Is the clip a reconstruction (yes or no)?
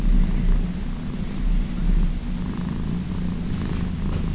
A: no